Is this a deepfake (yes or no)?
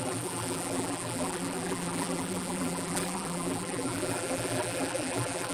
yes